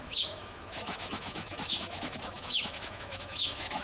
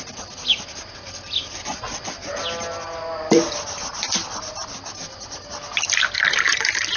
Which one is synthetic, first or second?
first